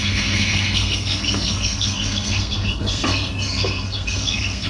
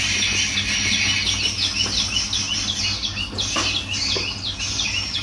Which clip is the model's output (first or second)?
first